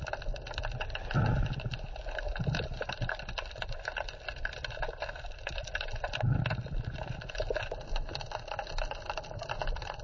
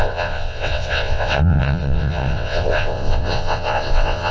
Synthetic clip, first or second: second